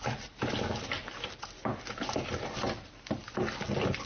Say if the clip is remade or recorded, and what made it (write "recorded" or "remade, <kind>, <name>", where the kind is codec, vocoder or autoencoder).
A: recorded